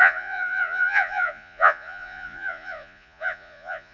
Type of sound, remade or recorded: remade